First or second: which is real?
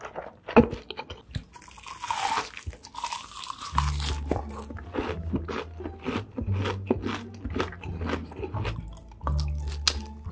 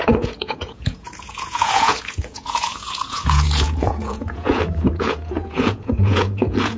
first